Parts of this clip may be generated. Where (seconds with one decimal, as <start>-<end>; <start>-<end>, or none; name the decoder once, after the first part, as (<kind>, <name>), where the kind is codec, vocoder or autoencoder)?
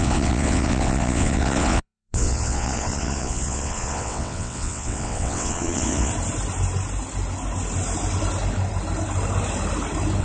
0.0-6.1 (vocoder, WaveNeXt)